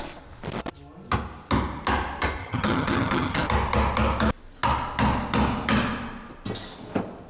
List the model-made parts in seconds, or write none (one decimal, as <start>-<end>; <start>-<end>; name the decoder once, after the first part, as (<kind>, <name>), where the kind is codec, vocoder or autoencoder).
2.4-3.4 (vocoder, HiFi-GAN)